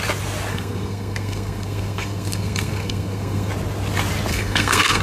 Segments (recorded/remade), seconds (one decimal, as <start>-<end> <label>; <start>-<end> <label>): 0.0-0.5 recorded; 0.5-3.5 remade; 3.5-4.3 recorded; 4.3-5.0 remade